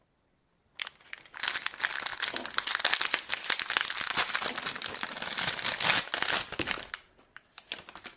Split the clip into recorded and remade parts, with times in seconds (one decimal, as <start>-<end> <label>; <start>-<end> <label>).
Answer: 0.0-8.2 recorded